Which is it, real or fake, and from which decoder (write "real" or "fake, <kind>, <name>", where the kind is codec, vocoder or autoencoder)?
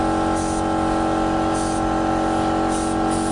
real